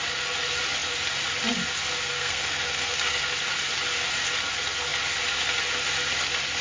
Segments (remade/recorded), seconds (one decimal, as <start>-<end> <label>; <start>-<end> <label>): 0.0-2.1 recorded; 2.1-3.2 remade; 3.2-6.6 recorded